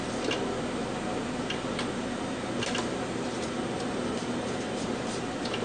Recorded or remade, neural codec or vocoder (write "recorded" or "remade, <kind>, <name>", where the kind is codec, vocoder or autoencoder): recorded